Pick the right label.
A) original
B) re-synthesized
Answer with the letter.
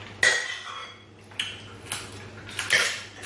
A